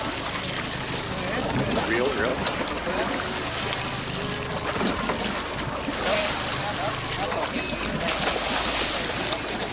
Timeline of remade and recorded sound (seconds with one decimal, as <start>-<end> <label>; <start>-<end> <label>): 0.0-9.7 recorded